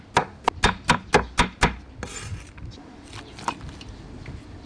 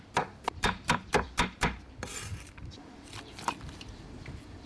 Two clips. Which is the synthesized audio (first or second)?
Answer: second